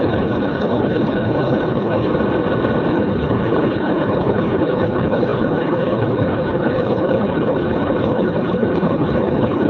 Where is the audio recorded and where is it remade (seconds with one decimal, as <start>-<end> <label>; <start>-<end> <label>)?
0.0-2.1 remade; 2.1-2.9 recorded; 2.9-9.7 remade